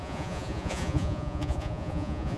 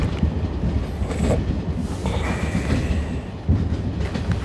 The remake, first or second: first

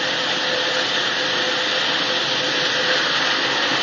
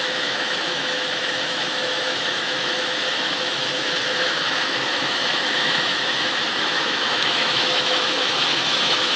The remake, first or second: second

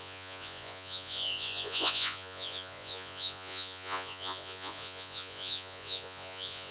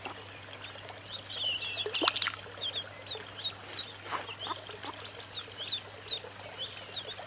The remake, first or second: first